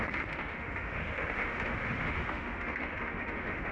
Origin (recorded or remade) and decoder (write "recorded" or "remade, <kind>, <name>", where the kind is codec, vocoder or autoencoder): remade, autoencoder, DAC-VAE